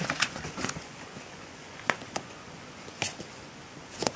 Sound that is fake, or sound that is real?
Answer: fake